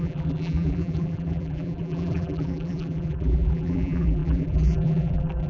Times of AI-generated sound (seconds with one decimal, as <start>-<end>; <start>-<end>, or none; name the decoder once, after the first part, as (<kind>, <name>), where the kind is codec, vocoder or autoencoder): 0.0-5.5 (vocoder, BigVGAN v2)